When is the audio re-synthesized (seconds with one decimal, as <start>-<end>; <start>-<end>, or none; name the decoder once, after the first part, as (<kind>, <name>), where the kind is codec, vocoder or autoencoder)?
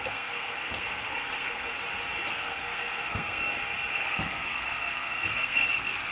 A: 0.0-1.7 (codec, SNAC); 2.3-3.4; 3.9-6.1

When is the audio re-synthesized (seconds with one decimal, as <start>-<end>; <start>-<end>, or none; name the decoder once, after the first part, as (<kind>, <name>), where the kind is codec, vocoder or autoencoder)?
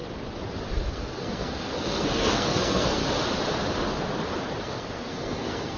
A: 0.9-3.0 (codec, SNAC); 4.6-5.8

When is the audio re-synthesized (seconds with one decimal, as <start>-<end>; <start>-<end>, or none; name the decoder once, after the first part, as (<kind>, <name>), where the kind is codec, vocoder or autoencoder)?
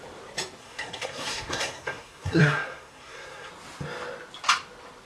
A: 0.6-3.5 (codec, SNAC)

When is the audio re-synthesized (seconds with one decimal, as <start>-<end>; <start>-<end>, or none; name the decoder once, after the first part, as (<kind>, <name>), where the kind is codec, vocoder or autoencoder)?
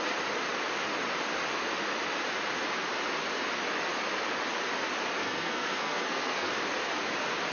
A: 5.2-6.5 (codec, SNAC)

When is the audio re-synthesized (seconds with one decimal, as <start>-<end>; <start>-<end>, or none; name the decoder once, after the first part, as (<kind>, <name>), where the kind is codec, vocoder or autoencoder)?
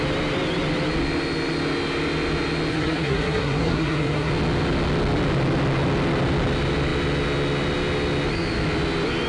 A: 2.7-4.3 (codec, SNAC)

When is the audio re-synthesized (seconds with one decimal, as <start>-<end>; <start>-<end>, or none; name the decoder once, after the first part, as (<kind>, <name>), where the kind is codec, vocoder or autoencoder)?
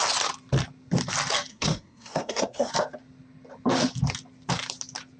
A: 1.5-2.7 (codec, SNAC)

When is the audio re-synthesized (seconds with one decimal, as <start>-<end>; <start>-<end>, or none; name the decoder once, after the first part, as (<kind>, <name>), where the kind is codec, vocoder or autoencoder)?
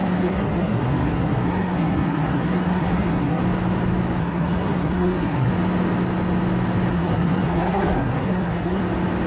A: 0.0-3.4 (codec, SNAC); 4.2-5.5; 6.9-8.8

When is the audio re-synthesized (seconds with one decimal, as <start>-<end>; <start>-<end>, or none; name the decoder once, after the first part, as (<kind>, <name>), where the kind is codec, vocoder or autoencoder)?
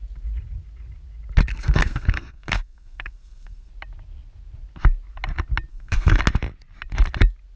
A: 1.5-3.7 (codec, SNAC); 5.7-6.2